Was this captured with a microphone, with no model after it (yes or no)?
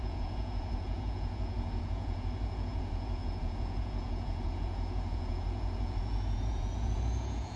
no